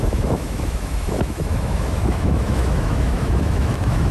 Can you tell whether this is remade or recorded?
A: remade